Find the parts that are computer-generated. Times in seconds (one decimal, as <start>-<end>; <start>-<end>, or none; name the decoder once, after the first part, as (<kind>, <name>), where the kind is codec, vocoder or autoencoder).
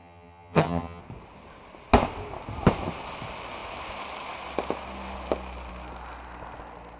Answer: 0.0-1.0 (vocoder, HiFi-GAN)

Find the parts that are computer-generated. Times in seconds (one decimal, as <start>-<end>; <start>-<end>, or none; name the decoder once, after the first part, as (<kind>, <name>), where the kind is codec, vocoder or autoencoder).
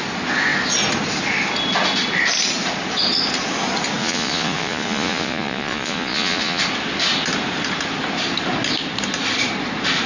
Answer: 4.0-6.6 (vocoder, Vocos)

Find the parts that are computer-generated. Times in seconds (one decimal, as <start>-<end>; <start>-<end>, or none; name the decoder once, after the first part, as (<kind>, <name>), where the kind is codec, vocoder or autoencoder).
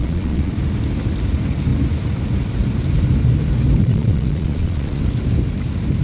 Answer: 0.0-0.5 (vocoder, Vocos); 3.8-5.0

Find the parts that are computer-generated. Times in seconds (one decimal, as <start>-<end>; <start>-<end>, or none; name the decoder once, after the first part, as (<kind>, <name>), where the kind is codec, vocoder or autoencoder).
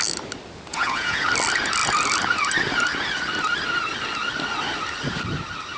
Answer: 0.7-1.3 (vocoder, Vocos)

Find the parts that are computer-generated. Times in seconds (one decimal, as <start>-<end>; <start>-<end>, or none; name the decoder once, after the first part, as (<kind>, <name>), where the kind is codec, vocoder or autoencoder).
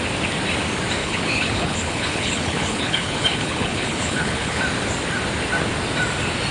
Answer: 1.0-4.6 (codec, HILCodec)